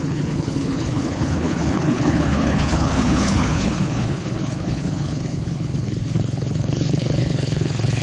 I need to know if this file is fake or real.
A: fake